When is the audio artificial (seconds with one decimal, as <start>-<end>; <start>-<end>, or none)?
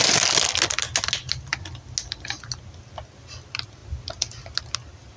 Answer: none